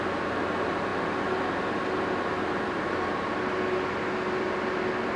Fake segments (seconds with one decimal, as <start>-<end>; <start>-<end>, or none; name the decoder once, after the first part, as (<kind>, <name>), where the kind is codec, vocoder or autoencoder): none